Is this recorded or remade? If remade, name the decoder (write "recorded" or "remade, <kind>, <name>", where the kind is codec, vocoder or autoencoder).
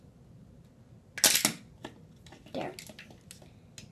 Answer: recorded